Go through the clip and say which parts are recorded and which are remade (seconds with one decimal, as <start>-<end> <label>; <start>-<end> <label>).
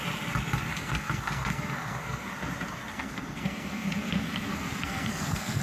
0.0-0.7 recorded; 0.7-2.3 remade; 2.3-2.9 recorded; 2.9-5.6 remade